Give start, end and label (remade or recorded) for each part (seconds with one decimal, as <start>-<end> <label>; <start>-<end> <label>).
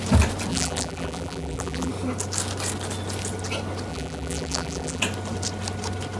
0.0-0.5 recorded; 0.5-1.9 remade; 1.9-3.9 recorded; 3.9-5.0 remade; 5.0-6.2 recorded